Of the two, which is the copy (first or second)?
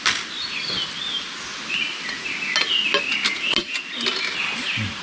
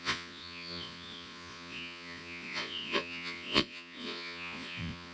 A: second